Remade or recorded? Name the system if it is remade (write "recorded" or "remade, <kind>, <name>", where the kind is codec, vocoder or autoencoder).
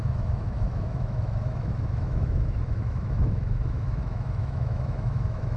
remade, autoencoder, DAC-VAE